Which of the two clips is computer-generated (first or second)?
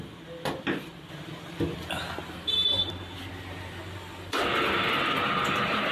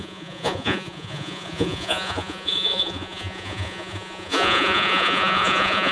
second